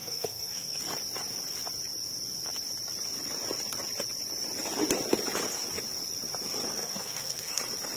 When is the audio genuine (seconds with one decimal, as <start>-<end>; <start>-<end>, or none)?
0.8-6.8; 7.6-8.0